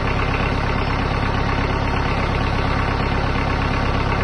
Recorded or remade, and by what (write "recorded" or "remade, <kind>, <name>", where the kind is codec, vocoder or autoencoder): recorded